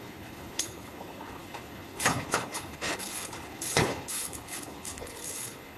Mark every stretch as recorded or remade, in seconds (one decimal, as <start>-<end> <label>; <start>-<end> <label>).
0.0-5.8 remade